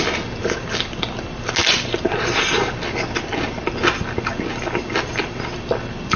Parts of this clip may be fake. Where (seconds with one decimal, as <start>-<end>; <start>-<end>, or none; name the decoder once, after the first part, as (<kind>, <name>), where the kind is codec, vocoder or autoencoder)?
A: none